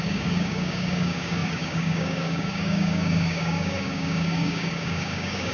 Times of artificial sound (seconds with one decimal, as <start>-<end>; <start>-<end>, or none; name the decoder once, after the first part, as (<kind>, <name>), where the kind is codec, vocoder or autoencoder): 0.0-5.5 (codec, DAC)